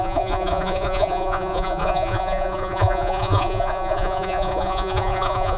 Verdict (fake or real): fake